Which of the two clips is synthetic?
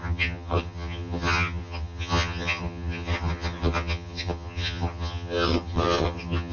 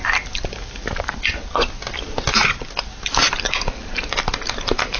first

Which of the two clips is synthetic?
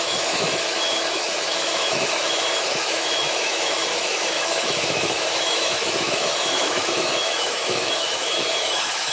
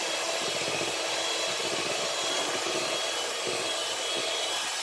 first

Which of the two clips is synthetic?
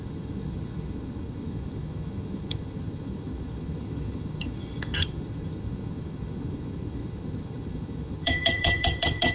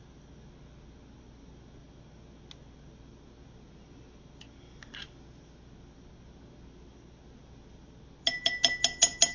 first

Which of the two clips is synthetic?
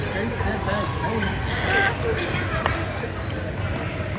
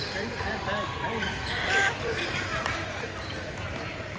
second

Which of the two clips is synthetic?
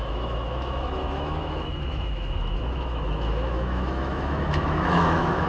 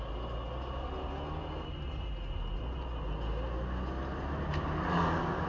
first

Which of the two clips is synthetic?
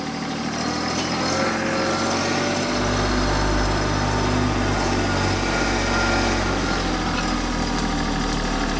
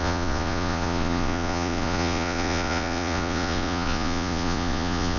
second